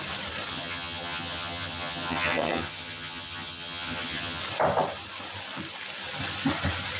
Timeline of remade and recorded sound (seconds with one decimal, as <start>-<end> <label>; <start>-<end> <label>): 0.0-0.5 recorded; 0.5-4.4 remade; 4.4-7.0 recorded